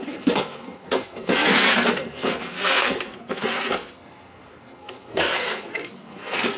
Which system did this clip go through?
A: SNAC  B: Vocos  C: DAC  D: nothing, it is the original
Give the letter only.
A